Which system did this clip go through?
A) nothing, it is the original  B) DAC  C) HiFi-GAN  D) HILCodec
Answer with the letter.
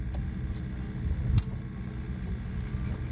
A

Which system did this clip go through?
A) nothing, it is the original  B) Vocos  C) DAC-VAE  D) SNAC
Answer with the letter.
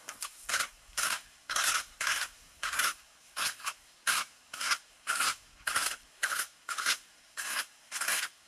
D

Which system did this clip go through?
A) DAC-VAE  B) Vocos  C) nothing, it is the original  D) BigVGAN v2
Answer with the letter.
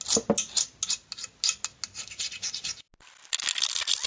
C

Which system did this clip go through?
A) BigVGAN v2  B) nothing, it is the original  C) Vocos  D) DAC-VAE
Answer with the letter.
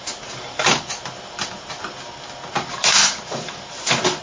B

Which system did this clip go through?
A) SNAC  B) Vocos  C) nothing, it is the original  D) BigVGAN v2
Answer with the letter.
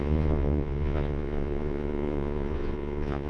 B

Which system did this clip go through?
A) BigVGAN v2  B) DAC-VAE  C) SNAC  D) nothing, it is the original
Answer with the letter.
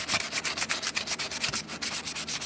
A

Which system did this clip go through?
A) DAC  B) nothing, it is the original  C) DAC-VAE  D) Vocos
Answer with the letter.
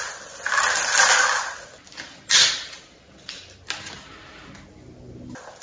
B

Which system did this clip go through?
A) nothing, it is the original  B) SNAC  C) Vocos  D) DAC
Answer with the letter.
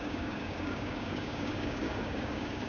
D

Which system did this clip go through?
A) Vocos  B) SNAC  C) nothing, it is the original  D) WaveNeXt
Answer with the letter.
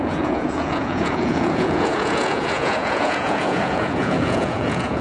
A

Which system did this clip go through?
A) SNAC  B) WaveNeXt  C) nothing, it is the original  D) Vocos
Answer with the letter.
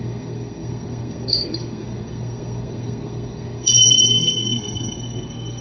A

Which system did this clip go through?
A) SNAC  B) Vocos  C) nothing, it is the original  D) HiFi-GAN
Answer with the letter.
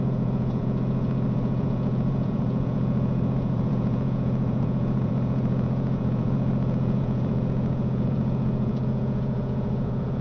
B